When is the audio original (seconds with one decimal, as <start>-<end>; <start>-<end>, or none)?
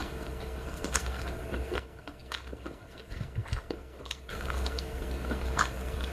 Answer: none